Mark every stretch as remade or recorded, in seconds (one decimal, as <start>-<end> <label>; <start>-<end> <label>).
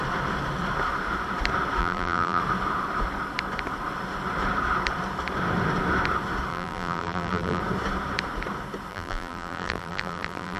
0.0-1.8 recorded; 1.8-2.4 remade; 2.4-6.5 recorded; 6.5-7.6 remade; 7.6-8.9 recorded; 8.9-10.6 remade